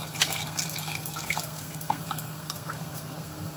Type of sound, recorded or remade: remade